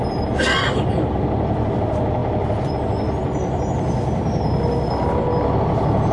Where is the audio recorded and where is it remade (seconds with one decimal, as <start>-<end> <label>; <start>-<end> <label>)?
0.0-6.1 recorded